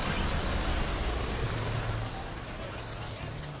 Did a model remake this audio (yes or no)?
yes